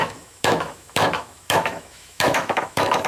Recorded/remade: remade